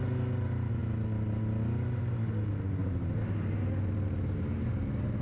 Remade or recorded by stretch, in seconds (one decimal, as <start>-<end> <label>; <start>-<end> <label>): 0.0-2.8 recorded; 2.8-3.5 remade; 3.5-5.2 recorded